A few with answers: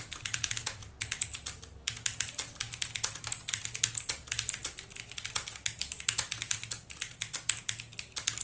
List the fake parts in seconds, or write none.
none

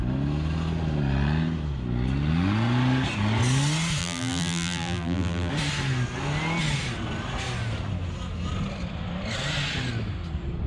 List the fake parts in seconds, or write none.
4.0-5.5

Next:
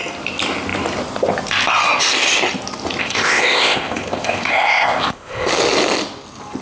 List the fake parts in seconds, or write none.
3.0-5.5